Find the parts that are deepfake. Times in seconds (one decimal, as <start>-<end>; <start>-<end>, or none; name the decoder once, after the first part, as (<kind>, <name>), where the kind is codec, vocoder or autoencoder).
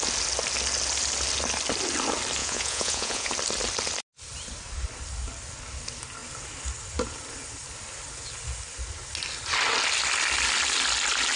2.4-3.3 (vocoder, Vocos)